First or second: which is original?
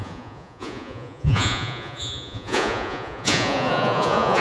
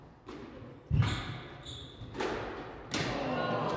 second